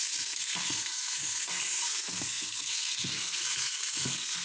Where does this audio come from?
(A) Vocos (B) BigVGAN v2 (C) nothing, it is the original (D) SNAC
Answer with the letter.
D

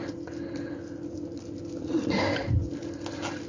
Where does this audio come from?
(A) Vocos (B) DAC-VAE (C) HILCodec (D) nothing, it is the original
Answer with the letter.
D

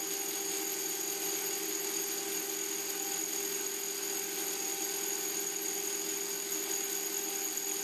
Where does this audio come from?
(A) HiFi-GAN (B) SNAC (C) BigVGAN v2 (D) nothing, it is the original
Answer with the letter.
D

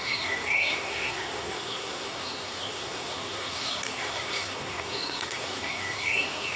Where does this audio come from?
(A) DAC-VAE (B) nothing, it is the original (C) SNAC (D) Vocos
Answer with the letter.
C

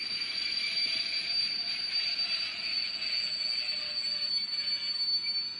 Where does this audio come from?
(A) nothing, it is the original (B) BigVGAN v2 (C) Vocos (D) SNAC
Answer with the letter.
A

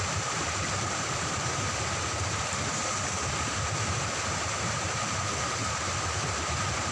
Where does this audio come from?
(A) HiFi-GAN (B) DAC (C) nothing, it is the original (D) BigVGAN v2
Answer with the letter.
D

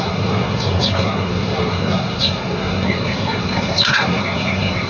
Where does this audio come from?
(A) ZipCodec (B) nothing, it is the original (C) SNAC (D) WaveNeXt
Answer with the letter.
C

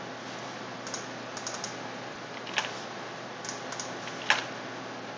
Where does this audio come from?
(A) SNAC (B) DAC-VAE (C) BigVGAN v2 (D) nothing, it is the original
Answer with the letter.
D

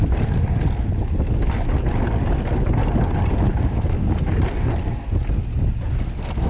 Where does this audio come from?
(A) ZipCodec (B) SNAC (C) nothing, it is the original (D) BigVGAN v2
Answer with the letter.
C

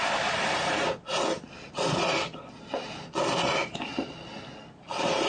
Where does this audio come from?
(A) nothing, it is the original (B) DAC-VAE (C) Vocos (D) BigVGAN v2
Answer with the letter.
A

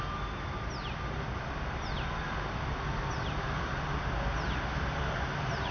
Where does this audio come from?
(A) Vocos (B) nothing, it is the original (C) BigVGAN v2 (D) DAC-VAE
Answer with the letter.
B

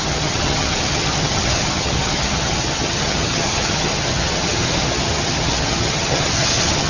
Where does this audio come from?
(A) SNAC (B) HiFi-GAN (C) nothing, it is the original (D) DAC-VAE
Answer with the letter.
B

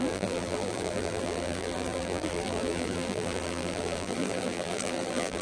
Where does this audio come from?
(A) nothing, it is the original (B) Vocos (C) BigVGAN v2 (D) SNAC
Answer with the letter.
C